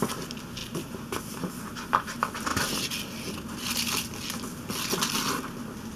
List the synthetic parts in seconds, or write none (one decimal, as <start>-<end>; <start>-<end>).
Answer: none